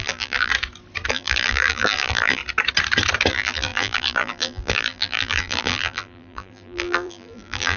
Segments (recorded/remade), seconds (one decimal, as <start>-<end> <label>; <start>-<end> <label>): 0.0-0.5 remade; 0.5-1.1 recorded; 1.1-2.4 remade; 2.4-3.3 recorded; 3.3-7.8 remade